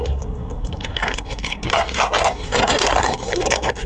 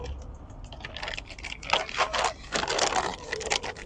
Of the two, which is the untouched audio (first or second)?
second